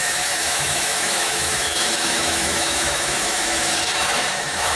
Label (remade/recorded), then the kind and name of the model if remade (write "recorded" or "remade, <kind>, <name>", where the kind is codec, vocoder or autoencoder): remade, autoencoder, DAC-VAE